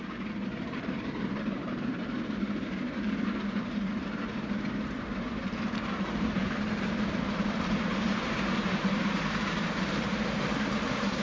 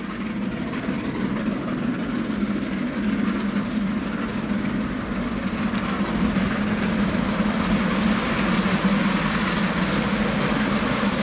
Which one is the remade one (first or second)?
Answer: first